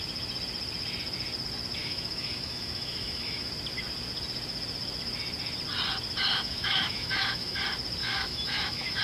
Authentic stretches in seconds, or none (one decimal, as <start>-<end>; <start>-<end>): 0.0-1.8; 3.5-6.3; 7.6-8.0